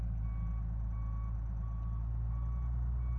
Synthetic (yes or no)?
no